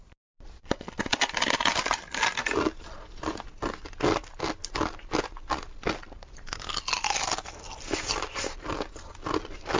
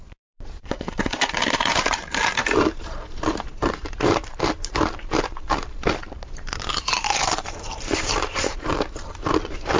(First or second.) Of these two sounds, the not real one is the second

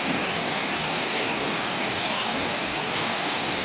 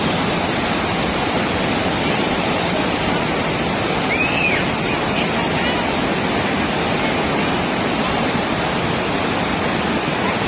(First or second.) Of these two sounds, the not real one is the first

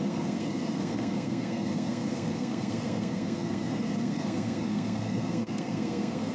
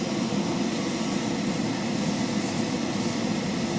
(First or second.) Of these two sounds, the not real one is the first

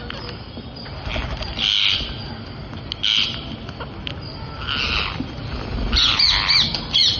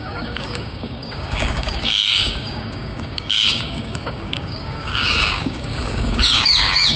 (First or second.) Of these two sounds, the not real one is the second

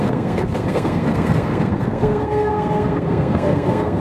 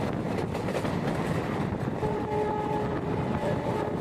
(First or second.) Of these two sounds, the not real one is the first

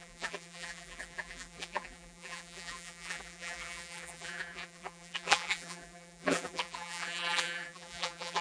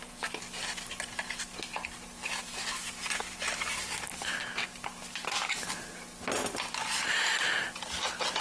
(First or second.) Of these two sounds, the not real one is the first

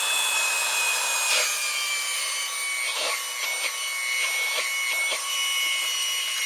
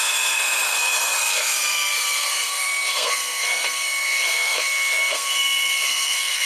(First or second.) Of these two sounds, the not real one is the second